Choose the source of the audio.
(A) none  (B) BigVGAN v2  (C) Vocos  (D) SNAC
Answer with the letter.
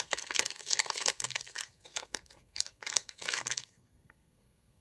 D